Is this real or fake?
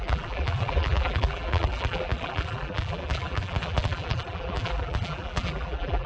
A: fake